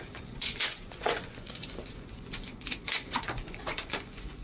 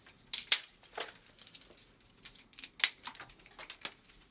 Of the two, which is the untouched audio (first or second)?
second